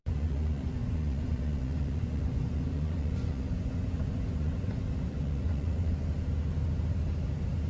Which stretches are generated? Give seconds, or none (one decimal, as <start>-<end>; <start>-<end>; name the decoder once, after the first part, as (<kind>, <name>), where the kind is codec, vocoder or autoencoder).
0.0-6.0 (vocoder, Vocos)